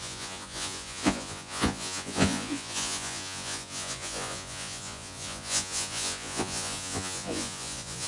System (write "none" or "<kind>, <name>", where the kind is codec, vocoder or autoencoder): vocoder, Vocos